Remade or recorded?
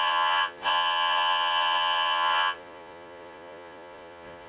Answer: remade